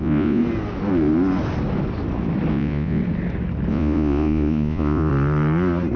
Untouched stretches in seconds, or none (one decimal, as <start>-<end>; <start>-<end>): 0.4-2.5; 3.0-3.7; 5.1-6.0